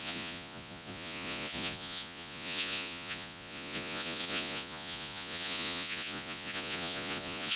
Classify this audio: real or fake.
fake